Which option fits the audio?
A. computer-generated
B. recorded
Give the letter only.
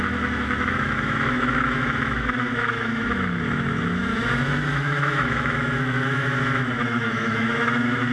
A